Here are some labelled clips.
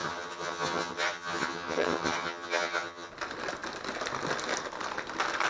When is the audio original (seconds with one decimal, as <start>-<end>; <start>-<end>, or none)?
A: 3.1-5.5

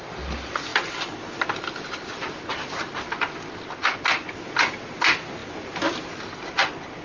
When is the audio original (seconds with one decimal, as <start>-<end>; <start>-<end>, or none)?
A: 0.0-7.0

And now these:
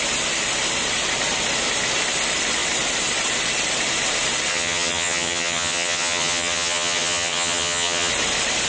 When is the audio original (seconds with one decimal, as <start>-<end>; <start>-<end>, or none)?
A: 0.0-4.5; 8.1-8.7

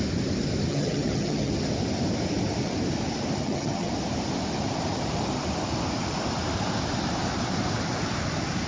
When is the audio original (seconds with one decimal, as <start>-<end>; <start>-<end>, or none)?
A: 0.0-0.7; 1.5-3.4; 3.9-8.7